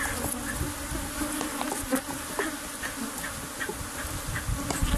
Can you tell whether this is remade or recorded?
recorded